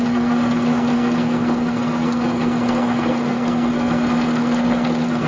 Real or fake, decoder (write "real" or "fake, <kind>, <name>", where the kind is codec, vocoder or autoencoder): fake, codec, SNAC